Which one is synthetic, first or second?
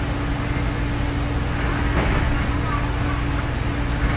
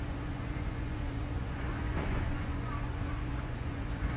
second